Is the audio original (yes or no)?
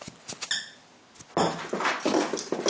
yes